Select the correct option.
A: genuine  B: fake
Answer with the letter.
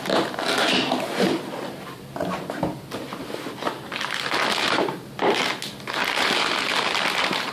A